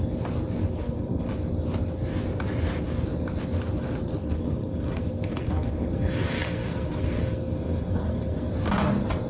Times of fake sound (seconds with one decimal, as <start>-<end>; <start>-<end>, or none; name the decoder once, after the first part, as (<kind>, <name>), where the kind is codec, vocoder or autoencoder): 0.6-1.3 (codec, SNAC); 4.2-8.5